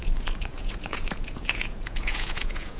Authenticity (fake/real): fake